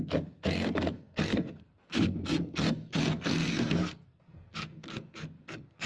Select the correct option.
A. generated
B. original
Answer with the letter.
A